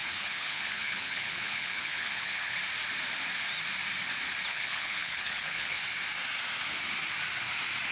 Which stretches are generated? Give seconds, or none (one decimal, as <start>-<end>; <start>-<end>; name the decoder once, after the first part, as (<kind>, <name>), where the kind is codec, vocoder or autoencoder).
0.0-2.6 (codec, HILCodec); 4.5-5.8